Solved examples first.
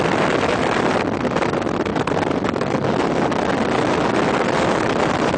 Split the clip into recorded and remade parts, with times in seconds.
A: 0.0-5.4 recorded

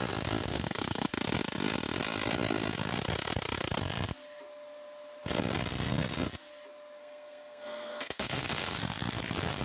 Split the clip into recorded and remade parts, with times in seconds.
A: 0.0-0.5 recorded; 0.5-1.1 remade; 1.1-7.0 recorded; 7.0-8.8 remade; 8.8-9.6 recorded

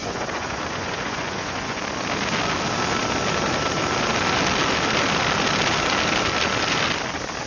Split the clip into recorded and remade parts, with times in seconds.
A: 0.0-1.8 remade; 1.8-7.5 recorded

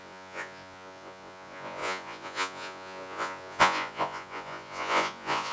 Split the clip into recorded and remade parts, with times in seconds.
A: 0.0-5.5 remade

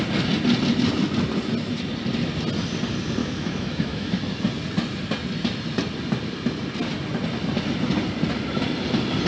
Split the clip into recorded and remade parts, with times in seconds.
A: 0.0-3.2 recorded; 3.2-4.2 remade; 4.2-9.3 recorded

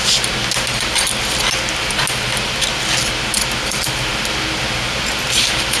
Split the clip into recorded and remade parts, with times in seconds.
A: 0.0-5.8 recorded

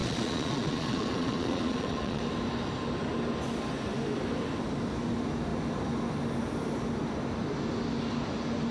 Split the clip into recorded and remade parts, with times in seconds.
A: 0.0-2.2 remade; 2.2-8.7 recorded